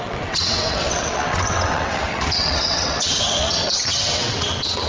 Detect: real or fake fake